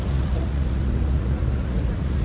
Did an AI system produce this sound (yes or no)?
yes